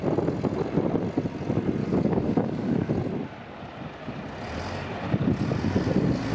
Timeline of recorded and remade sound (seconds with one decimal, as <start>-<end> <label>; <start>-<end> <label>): 0.0-1.8 recorded; 1.8-2.9 remade; 2.9-6.3 recorded